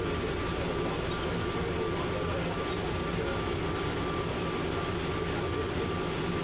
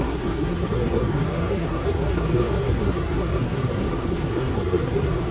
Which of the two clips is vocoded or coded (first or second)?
second